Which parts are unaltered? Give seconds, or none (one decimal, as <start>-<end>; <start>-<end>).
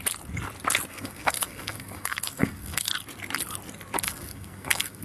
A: 0.0-0.9; 2.9-4.0